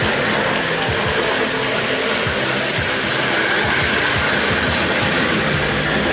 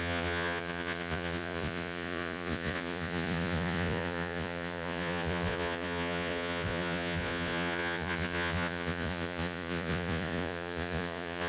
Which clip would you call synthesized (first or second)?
second